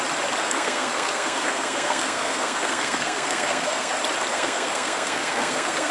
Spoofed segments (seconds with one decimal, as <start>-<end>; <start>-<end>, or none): 0.4-3.9; 4.3-5.9